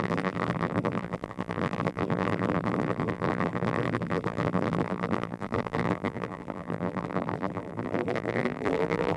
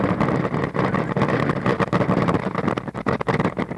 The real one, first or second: second